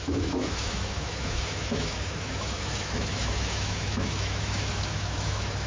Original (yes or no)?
no